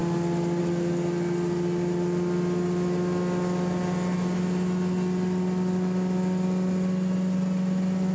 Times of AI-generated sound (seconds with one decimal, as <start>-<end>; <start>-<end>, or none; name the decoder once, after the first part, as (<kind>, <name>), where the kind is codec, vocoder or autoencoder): none